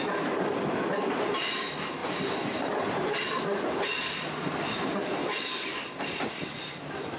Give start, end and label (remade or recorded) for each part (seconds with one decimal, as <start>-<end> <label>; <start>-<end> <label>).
0.0-7.2 recorded